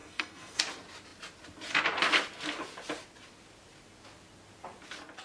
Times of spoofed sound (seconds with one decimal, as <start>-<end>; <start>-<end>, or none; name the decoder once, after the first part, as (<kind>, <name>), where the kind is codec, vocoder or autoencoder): 0.0-0.6 (codec, SNAC)